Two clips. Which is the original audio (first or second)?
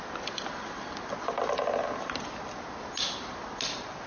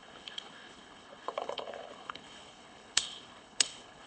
first